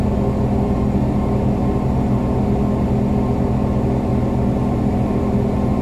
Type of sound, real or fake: real